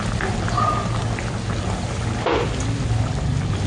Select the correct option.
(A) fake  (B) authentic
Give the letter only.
B